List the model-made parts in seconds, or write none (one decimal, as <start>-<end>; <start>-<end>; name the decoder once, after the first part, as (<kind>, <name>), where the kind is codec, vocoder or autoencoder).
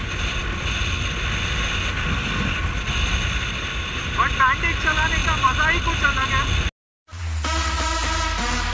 none